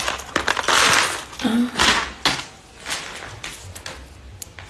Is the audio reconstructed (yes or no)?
no